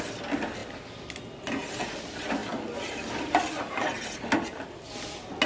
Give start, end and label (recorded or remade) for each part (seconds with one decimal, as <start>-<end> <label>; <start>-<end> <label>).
0.0-5.5 recorded